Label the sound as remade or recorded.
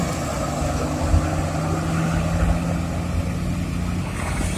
recorded